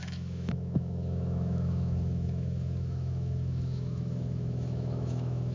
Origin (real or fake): fake